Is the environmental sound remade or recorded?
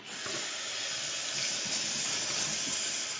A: recorded